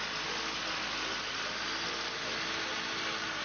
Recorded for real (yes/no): yes